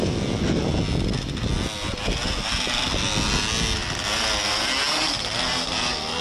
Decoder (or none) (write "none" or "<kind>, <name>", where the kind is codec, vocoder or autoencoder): none